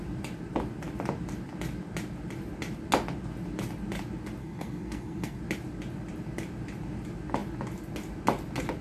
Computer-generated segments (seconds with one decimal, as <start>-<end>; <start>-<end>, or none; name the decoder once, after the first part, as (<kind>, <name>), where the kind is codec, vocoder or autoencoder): 4.4-5.4 (codec, SNAC)